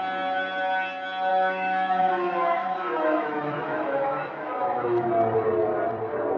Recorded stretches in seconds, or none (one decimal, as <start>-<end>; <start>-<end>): 0.0-1.3; 5.1-6.4